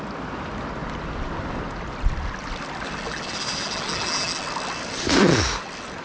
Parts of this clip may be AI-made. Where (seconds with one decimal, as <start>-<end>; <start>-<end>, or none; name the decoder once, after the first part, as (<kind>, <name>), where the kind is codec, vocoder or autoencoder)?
none